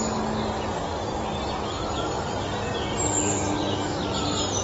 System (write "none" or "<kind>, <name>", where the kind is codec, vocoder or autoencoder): none